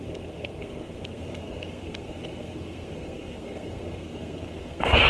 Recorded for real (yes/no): no